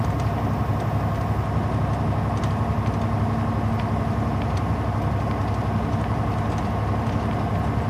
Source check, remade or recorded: recorded